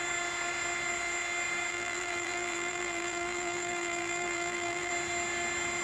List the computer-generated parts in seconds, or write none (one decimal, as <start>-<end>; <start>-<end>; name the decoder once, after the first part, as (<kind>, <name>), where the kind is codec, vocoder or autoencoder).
1.7-4.9 (vocoder, BigVGAN v2)